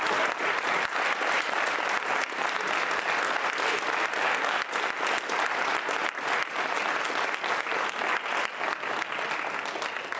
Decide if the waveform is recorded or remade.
recorded